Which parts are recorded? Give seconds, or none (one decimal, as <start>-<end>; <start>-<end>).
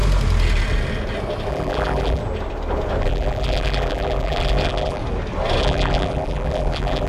0.0-1.5; 2.2-3.0; 5.0-5.6